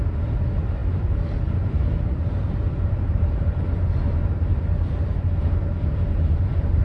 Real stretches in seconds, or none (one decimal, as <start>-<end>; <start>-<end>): 0.0-0.8; 4.9-6.1